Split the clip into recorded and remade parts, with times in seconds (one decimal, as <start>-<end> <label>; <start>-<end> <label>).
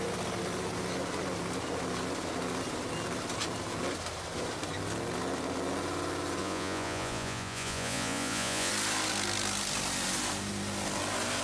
0.0-6.4 recorded; 6.4-8.7 remade; 8.7-11.4 recorded